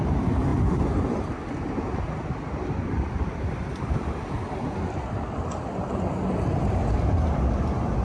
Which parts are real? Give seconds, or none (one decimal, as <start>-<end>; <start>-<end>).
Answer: 0.0-8.0